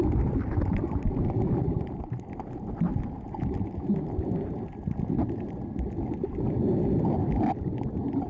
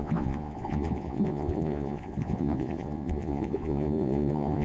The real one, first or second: first